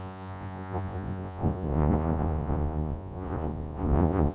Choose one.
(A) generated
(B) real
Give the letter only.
A